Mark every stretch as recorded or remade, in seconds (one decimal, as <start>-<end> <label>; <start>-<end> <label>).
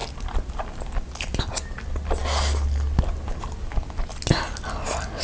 0.0-5.2 recorded